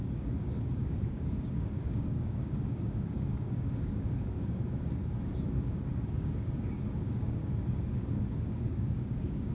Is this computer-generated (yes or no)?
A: yes